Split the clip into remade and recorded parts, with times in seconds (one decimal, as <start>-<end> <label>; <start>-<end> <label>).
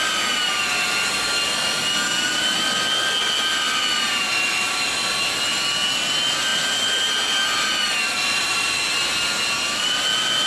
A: 0.0-10.5 recorded